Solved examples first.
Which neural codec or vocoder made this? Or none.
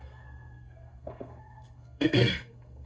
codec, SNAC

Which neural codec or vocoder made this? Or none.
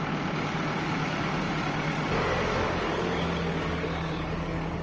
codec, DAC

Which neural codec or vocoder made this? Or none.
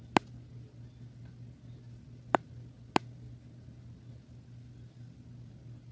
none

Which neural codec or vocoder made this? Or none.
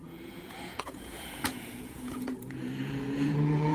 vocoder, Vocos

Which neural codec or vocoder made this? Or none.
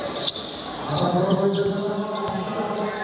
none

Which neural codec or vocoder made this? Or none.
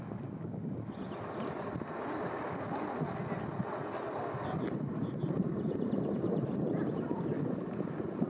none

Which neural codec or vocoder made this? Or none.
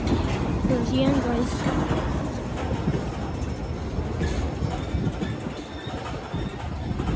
none